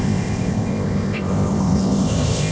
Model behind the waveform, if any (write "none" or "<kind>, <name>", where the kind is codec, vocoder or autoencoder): codec, ZipCodec